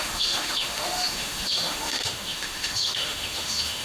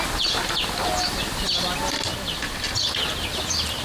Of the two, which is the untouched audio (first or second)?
second